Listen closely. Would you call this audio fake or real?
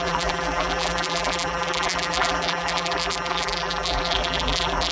fake